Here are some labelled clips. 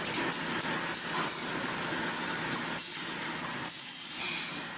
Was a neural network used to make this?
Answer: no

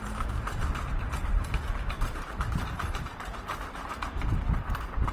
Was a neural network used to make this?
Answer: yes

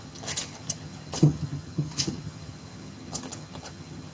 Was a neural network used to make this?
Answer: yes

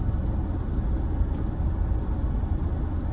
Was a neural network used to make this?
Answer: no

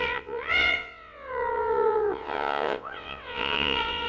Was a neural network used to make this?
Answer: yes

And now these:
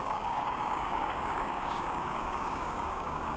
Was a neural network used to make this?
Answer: yes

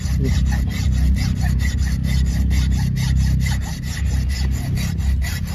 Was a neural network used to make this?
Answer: no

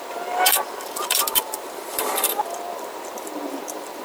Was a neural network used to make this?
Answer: yes